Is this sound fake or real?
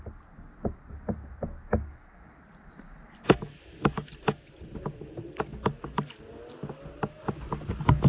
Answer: real